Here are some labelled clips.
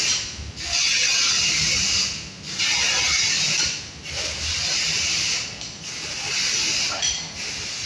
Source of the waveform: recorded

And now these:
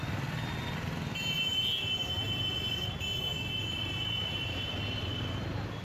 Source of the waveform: recorded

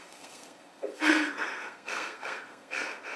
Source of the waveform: remade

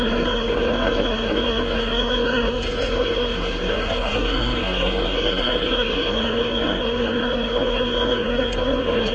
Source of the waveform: remade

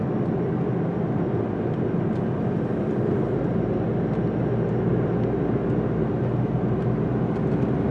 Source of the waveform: recorded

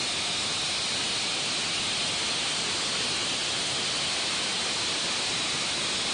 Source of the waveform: recorded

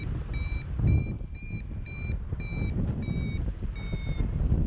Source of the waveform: recorded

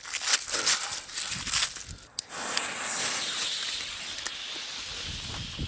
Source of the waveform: recorded